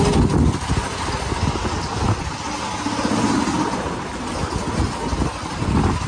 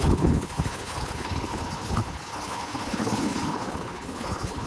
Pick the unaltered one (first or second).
first